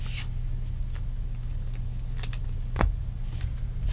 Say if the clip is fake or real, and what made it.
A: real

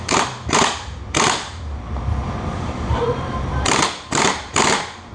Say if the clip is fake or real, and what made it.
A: fake, vocoder, BigVGAN v2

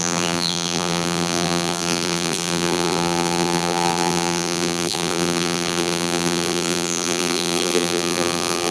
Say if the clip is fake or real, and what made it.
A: fake, vocoder, BigVGAN v2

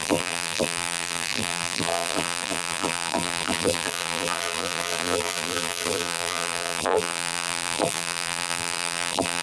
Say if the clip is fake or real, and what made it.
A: fake, vocoder, BigVGAN v2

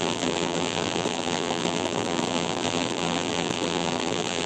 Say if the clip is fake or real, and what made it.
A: fake, vocoder, BigVGAN v2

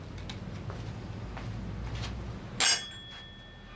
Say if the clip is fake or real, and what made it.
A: real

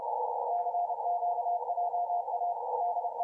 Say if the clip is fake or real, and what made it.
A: real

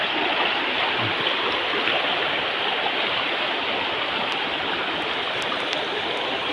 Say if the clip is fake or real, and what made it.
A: real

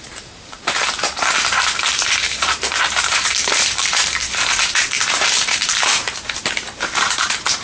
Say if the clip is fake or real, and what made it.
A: fake, vocoder, BigVGAN v2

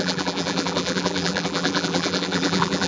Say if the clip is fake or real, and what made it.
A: fake, vocoder, BigVGAN v2